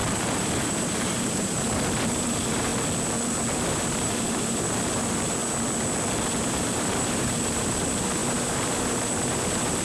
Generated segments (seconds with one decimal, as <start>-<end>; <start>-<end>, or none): 0.0-2.7; 3.5-5.4; 6.4-9.8